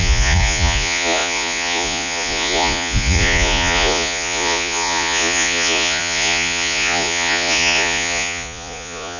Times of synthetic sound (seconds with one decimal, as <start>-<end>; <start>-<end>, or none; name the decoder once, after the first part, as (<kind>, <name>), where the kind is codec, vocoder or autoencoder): 0.0-9.2 (vocoder, Vocos)